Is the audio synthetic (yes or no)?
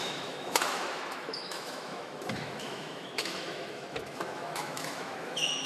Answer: yes